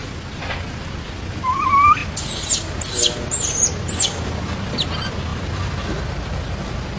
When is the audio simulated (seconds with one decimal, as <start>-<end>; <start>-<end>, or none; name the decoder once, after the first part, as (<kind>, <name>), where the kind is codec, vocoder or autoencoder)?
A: none